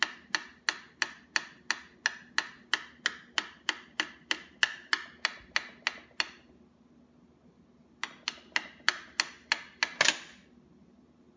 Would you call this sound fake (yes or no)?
no